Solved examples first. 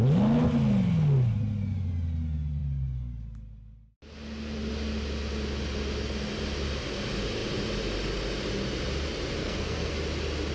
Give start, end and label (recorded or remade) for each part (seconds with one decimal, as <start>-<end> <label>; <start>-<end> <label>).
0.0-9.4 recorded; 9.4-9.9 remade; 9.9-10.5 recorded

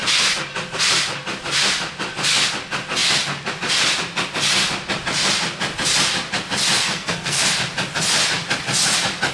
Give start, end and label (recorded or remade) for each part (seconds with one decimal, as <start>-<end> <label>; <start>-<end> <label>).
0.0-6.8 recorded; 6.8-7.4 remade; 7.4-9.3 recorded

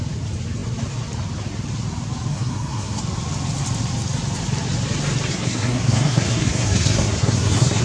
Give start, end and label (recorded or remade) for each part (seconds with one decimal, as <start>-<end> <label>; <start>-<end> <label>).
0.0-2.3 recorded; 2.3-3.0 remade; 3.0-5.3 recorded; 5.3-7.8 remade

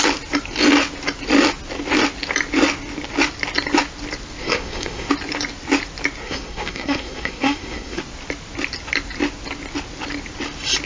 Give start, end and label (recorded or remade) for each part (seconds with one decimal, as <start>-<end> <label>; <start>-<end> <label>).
0.0-4.4 recorded; 4.4-5.1 remade; 5.1-6.2 recorded; 6.2-8.0 remade; 8.0-10.9 recorded

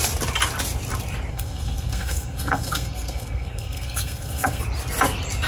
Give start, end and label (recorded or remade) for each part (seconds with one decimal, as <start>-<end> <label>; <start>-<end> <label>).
0.0-1.3 recorded; 1.3-4.6 remade; 4.6-5.5 recorded

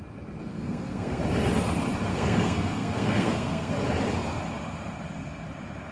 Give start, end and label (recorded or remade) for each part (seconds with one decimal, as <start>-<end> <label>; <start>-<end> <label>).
0.0-0.5 recorded; 0.5-1.2 remade; 1.2-2.1 recorded; 2.1-3.7 remade; 3.7-5.9 recorded

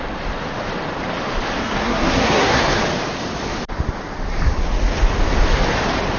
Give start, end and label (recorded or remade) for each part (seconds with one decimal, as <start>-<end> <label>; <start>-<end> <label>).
0.0-1.6 recorded; 1.6-2.8 remade; 2.8-6.2 recorded

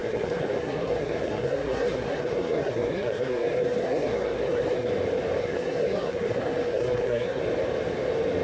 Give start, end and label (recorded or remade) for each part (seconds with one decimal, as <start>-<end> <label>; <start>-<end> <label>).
0.0-4.9 remade; 4.9-5.4 recorded; 5.4-7.4 remade; 7.4-8.4 recorded